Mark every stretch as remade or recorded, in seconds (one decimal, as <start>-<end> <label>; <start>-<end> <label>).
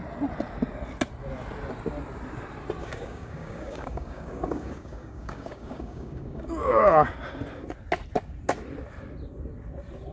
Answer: 0.0-2.8 recorded; 2.8-7.1 remade; 7.1-10.1 recorded